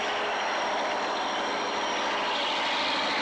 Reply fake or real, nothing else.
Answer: real